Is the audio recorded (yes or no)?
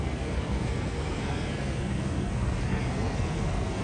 no